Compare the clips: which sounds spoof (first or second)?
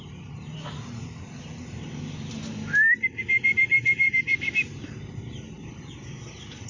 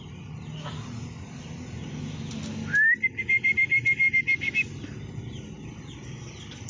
first